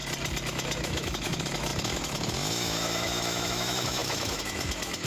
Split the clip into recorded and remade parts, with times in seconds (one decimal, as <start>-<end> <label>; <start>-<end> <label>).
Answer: 0.0-0.5 recorded; 0.5-5.1 remade